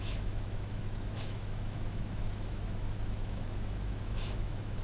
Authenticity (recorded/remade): remade